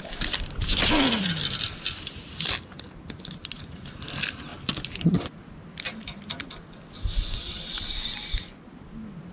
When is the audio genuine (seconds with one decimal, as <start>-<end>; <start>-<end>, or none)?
0.0-9.3